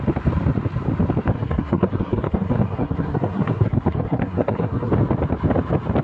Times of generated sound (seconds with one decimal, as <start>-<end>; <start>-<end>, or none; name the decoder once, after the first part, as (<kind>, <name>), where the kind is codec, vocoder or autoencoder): 1.3-4.9 (codec, SNAC)